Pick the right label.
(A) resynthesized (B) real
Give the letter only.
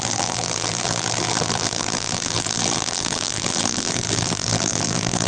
A